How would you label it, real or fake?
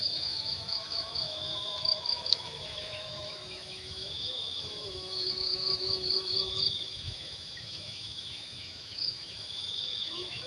fake